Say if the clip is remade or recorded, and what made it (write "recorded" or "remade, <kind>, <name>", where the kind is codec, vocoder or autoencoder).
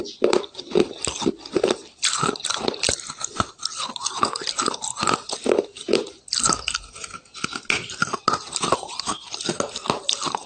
recorded